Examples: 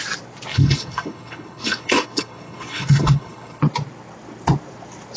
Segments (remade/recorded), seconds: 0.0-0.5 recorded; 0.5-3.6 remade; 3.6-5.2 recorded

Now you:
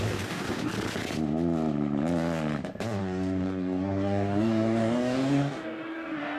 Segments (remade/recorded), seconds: 0.0-0.7 remade; 0.7-3.0 recorded; 3.0-6.4 remade

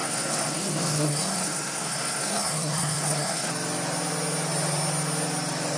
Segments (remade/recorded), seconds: 0.0-3.5 remade; 3.5-5.8 recorded

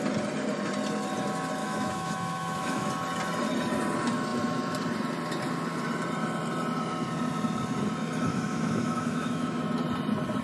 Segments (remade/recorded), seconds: 0.0-1.6 recorded; 1.6-2.9 remade; 2.9-8.3 recorded; 8.3-9.6 remade; 9.6-10.4 recorded

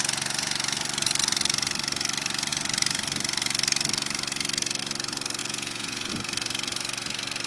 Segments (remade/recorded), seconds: 0.0-5.4 recorded; 5.4-6.1 remade; 6.1-7.5 recorded

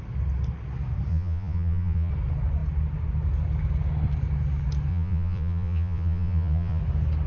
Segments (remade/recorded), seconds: 0.0-1.1 recorded; 1.1-2.1 remade; 2.1-4.9 recorded; 4.9-6.8 remade; 6.8-7.3 recorded